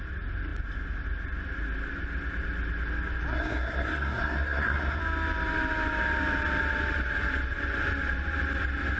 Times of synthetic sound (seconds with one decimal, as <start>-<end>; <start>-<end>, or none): 3.3-5.0